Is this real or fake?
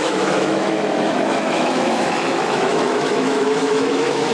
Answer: fake